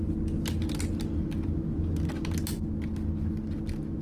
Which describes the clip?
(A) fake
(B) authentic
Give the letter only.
B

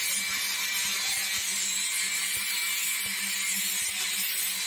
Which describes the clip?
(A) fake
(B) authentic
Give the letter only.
B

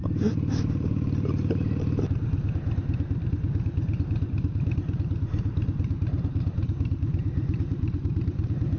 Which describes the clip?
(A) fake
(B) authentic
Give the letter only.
A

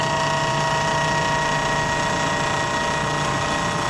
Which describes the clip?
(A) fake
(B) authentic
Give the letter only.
B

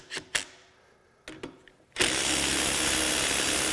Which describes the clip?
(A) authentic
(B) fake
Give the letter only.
A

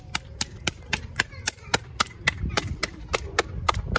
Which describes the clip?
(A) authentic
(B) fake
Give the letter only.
B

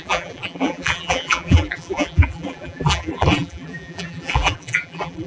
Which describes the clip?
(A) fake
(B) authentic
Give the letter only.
A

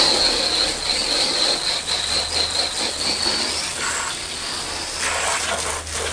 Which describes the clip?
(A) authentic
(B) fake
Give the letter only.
A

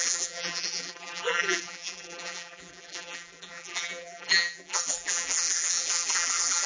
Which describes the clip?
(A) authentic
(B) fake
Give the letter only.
B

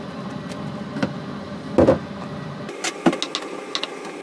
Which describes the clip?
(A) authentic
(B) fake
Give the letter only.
A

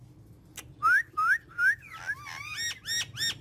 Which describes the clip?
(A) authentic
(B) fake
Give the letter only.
A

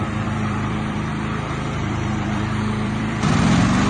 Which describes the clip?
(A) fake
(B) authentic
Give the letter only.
A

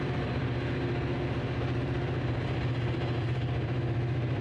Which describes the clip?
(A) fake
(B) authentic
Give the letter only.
A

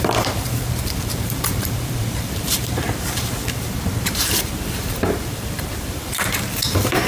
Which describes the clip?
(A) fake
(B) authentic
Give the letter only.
A